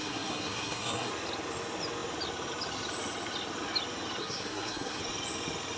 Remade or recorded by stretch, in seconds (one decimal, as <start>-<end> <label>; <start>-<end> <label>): 0.0-1.1 remade; 1.1-4.2 recorded; 4.2-5.0 remade; 5.0-5.8 recorded